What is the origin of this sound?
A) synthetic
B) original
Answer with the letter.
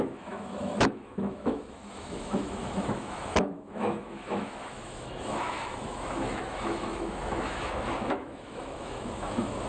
A